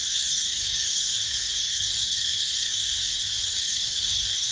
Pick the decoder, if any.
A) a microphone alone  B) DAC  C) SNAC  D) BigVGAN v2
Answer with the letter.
B